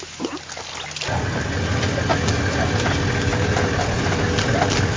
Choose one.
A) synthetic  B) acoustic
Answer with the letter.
B